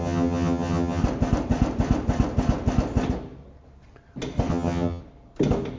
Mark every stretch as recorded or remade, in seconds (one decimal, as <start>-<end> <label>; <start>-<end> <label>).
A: 0.0-1.0 remade; 1.0-4.5 recorded; 4.5-5.0 remade; 5.0-5.8 recorded